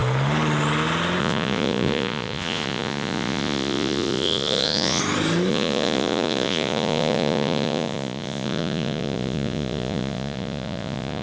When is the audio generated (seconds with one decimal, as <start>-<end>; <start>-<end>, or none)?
1.2-5.0; 5.5-11.2